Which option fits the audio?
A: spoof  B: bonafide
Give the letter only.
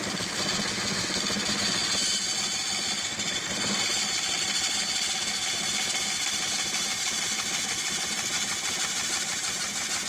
B